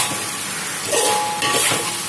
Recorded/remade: recorded